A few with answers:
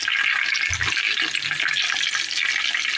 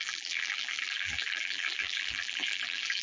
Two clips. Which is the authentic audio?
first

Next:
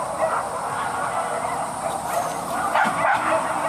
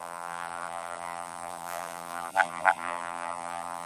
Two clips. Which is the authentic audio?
first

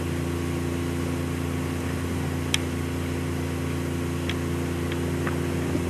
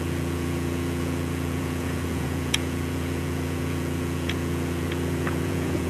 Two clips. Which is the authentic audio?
first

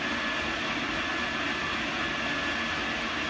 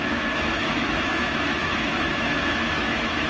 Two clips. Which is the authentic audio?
first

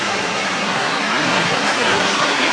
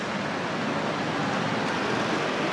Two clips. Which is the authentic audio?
second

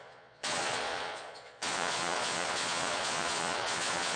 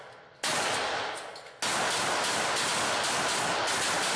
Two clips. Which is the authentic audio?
second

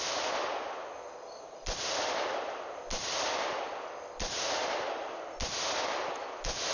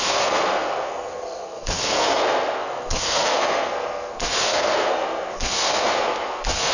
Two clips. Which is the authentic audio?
first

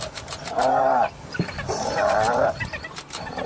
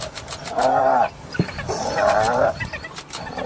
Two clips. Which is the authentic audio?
second